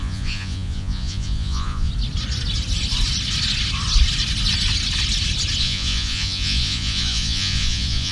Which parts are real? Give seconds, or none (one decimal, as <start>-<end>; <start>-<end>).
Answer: 1.9-5.6